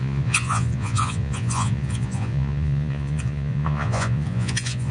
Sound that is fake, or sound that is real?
fake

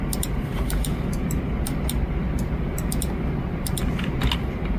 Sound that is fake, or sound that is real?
real